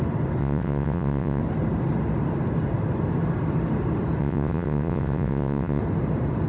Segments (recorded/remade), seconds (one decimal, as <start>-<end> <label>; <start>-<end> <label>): 0.0-0.4 recorded; 0.4-1.4 remade; 1.4-4.2 recorded; 4.2-5.8 remade; 5.8-6.5 recorded